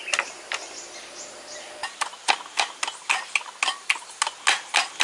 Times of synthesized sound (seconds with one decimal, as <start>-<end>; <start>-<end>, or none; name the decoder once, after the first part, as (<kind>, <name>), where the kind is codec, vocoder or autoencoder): none